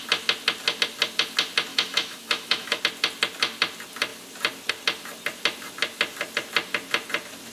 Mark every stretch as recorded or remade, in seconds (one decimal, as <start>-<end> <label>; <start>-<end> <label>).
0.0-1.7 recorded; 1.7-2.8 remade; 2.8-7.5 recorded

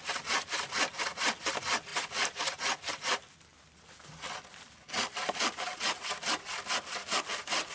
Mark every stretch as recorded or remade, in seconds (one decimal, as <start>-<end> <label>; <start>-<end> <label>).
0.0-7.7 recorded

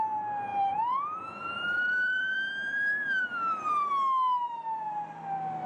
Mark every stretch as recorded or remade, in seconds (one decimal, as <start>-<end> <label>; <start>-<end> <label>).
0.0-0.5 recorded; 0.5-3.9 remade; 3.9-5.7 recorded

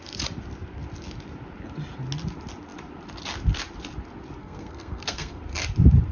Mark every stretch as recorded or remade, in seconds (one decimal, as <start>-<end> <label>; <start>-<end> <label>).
0.0-4.4 recorded; 4.4-5.4 remade; 5.4-6.1 recorded

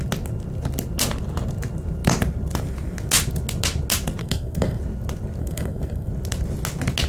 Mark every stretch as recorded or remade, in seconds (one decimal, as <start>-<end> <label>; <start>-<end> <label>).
0.0-4.2 recorded; 4.2-4.8 remade; 4.8-5.4 recorded; 5.4-6.1 remade; 6.1-7.1 recorded